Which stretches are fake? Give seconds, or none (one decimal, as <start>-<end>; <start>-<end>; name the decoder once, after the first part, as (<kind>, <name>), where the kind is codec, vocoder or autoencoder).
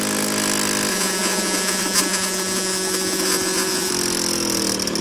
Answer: 0.9-3.9 (vocoder, Vocos)